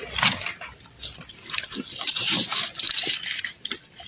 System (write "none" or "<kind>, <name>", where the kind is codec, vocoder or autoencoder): none